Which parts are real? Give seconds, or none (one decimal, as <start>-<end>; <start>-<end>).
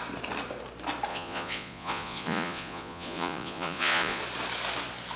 0.0-1.1; 4.2-5.2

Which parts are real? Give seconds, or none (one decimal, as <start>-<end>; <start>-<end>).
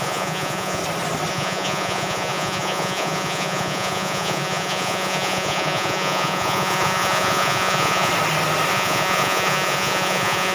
0.8-1.3; 8.1-8.7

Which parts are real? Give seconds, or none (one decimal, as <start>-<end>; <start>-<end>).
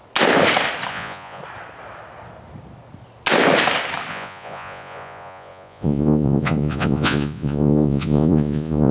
0.0-0.9; 1.4-4.1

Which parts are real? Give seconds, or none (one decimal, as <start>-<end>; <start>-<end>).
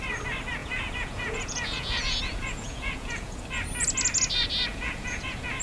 0.0-0.6; 3.4-4.7